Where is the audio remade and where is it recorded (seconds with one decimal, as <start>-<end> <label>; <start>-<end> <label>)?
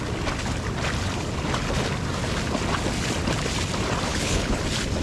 0.0-4.1 recorded; 4.1-4.6 remade; 4.6-5.0 recorded